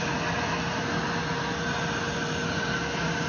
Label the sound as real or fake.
real